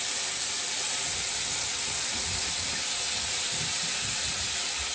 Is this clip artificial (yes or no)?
no